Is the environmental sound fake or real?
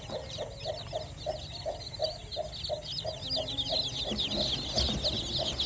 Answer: real